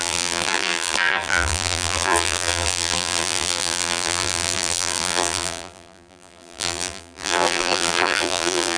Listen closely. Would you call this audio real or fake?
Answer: fake